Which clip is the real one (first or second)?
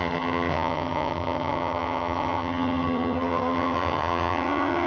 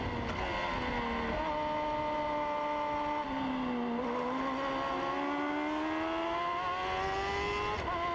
second